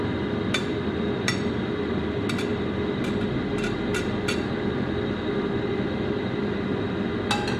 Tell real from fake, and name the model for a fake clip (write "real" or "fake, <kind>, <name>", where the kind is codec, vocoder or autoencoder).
real